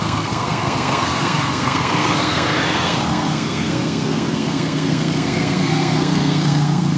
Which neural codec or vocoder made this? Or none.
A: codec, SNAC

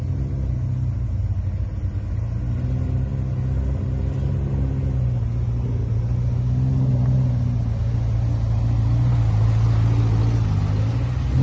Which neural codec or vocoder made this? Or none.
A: none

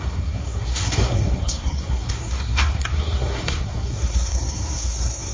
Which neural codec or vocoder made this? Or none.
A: codec, SNAC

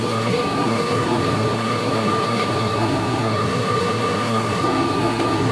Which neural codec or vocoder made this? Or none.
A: codec, SNAC